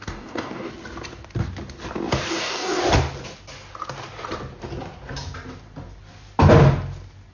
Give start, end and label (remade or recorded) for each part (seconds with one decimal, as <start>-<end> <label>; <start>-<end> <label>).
0.0-0.7 remade; 0.7-2.3 recorded; 2.3-2.8 remade; 2.8-7.3 recorded